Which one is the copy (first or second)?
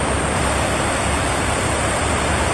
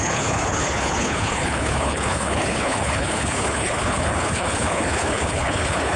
second